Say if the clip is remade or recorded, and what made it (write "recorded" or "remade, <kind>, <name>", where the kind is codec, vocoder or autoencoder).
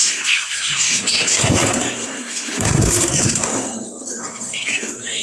remade, codec, SNAC